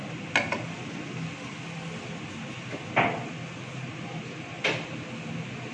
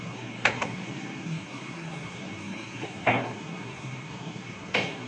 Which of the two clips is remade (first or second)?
second